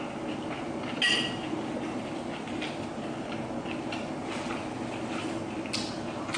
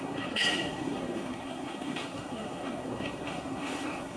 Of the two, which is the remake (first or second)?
second